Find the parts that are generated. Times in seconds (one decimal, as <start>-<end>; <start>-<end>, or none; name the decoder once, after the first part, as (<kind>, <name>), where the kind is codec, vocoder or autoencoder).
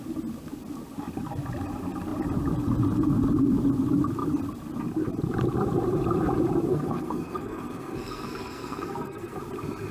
6.7-9.4 (codec, SNAC)